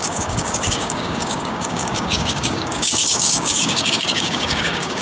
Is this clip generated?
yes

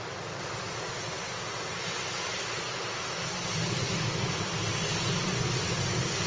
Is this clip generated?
no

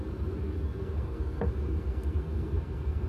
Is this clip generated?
yes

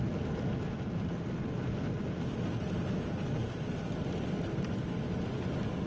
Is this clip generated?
no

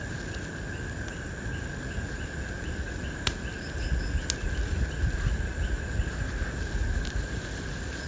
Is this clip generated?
no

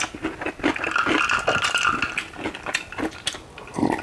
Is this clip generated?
no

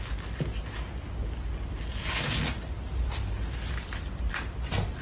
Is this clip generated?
no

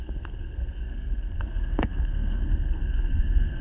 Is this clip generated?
yes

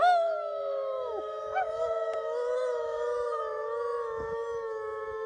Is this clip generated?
yes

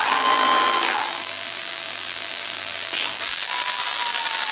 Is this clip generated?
yes